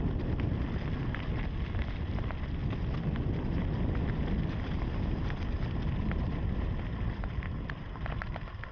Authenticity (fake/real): real